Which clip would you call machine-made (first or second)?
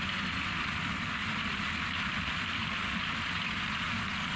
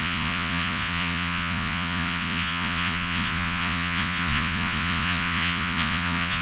second